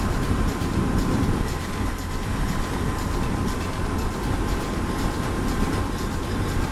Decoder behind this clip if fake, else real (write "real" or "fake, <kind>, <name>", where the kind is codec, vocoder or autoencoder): real